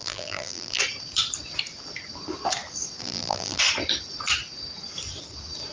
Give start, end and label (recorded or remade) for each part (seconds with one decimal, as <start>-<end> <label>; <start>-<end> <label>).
0.0-0.8 remade; 0.8-3.0 recorded; 3.0-3.6 remade; 3.6-5.7 recorded